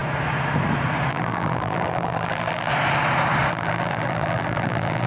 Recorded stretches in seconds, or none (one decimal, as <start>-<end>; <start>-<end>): 0.0-1.1; 2.7-3.5